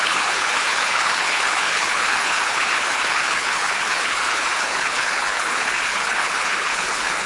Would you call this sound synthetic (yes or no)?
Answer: yes